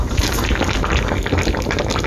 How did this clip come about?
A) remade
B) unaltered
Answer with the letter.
B